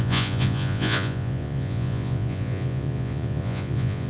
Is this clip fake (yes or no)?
yes